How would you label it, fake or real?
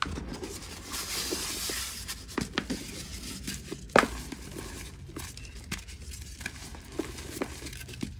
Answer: real